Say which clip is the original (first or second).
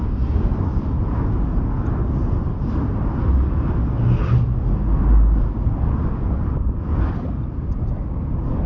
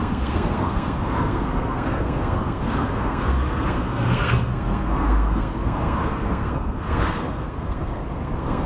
first